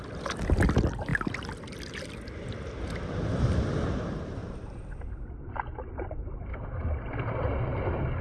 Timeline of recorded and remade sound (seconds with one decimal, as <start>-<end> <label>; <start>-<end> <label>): 0.0-8.2 recorded